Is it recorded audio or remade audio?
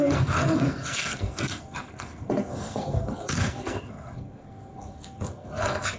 remade